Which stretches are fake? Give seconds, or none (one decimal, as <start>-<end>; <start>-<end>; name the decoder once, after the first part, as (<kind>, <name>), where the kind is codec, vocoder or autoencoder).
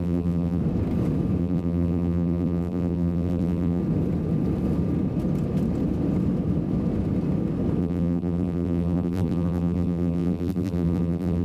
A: 0.0-0.6 (vocoder, BigVGAN v2); 1.4-3.8; 7.8-11.4